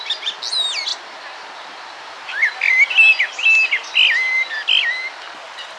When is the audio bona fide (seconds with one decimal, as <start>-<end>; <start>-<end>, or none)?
0.0-5.8